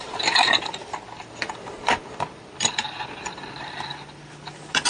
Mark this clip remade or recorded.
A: remade